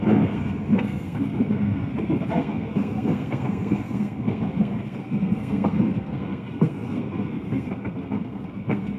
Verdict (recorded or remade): remade